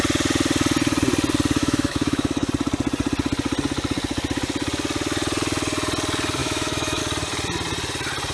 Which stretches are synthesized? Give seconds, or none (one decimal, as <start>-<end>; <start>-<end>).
1.6-2.5; 6.4-7.0